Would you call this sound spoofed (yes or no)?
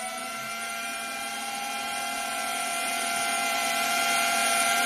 yes